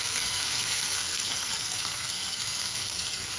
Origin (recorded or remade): remade